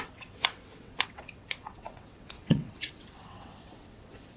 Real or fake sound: fake